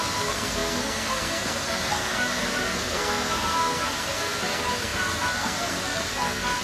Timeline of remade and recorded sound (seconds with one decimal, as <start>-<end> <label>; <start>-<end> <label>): 0.0-6.6 remade